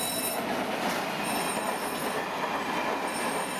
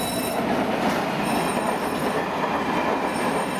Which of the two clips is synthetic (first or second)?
second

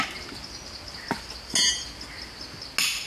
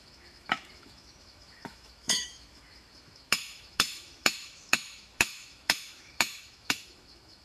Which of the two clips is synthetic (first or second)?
second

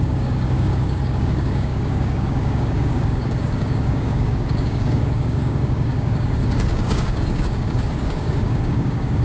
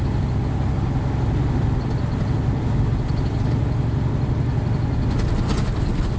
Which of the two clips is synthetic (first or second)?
first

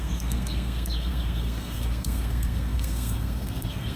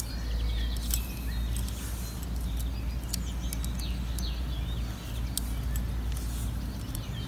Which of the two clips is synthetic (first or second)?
first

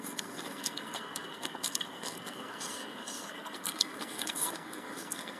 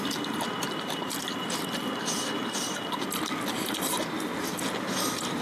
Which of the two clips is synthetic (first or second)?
first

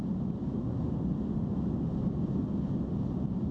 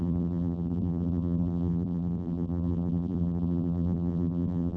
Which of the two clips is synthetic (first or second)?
second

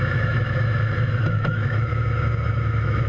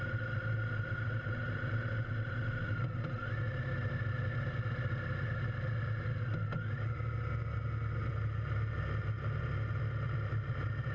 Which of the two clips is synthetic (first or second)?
first